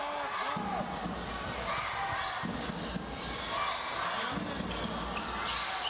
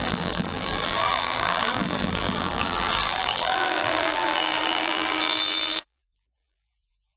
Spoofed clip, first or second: second